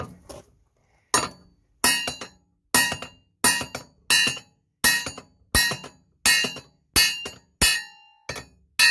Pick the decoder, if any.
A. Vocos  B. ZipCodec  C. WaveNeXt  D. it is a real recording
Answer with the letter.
D